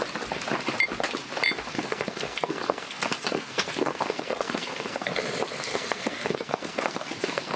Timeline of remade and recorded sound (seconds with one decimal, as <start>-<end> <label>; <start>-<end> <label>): 0.0-1.7 recorded; 1.7-5.1 remade; 5.1-5.7 recorded; 5.7-7.6 remade